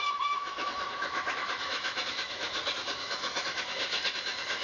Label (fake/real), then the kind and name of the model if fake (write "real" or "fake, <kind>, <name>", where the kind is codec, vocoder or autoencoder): fake, autoencoder, DAC-VAE